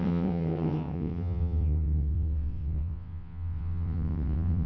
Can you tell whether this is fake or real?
fake